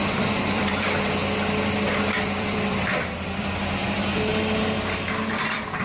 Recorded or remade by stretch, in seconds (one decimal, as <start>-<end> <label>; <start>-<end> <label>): 0.0-1.2 remade; 1.2-2.2 recorded; 2.2-4.3 remade; 4.3-5.3 recorded; 5.3-5.8 remade